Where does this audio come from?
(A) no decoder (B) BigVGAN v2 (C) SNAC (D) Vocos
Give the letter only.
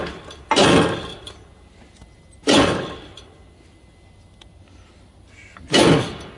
A